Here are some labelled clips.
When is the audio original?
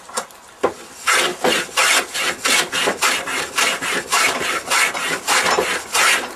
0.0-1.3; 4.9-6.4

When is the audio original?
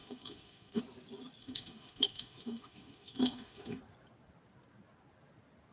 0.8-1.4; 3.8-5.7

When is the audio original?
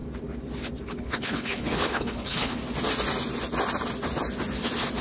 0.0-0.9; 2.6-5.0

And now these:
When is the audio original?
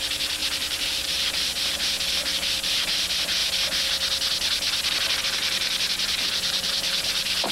3.4-5.2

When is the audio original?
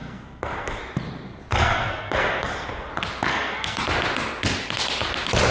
0.8-1.5; 2.9-3.3; 3.8-5.5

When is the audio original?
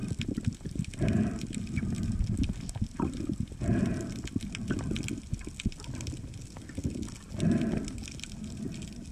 4.9-9.1